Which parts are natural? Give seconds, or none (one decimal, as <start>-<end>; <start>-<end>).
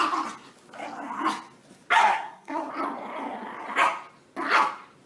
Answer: 0.0-2.0; 2.7-5.1